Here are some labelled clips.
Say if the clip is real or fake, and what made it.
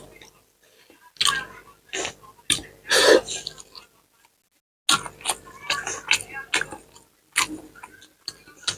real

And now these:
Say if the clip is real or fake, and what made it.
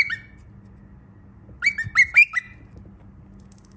real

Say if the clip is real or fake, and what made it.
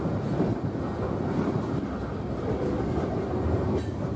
real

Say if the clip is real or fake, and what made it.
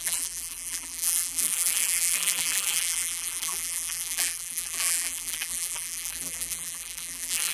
fake, vocoder, BigVGAN v2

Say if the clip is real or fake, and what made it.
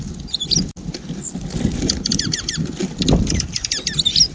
real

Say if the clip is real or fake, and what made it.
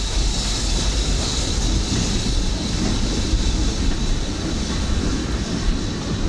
real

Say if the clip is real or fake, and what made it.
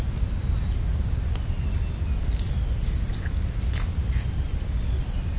real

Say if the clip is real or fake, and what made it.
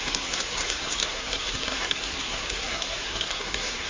fake, codec, SNAC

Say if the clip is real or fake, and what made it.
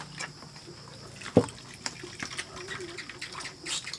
real